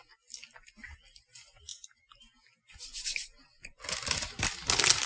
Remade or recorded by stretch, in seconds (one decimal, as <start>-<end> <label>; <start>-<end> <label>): 0.0-5.1 recorded